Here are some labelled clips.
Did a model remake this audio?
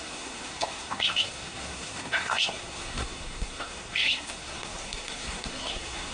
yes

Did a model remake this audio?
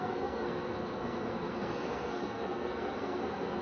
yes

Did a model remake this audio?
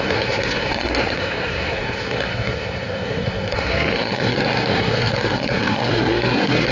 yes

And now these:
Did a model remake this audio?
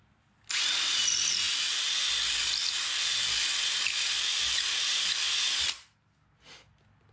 no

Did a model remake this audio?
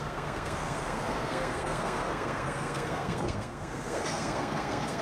yes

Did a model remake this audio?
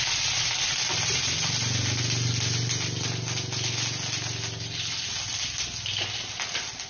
no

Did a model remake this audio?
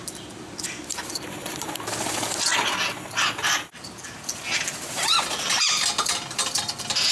no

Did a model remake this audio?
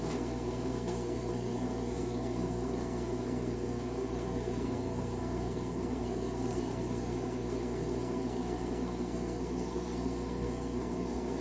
yes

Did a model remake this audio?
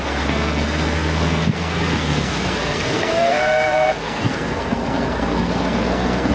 yes